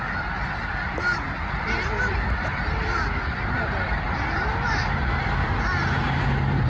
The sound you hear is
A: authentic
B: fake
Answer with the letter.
B